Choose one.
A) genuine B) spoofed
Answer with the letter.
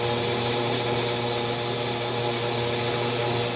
A